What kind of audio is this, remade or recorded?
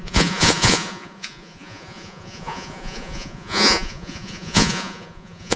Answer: remade